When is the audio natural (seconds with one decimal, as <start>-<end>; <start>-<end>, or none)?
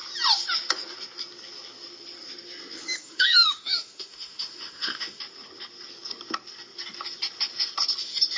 0.0-3.0; 5.2-8.4